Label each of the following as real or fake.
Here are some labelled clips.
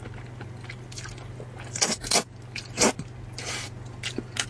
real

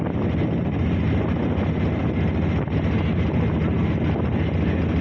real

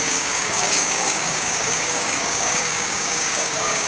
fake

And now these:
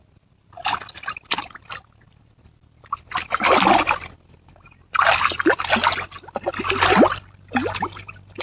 real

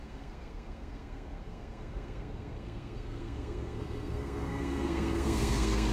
fake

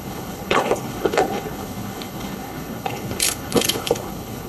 fake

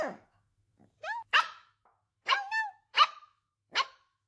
fake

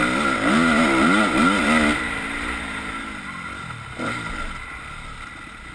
real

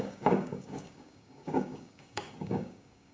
fake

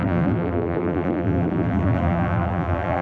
fake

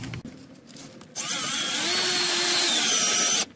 real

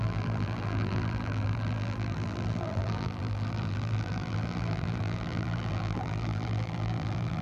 fake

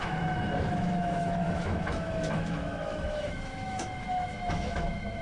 fake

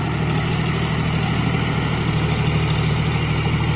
real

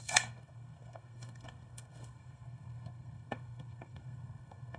fake